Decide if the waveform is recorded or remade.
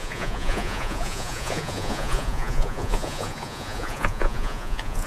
remade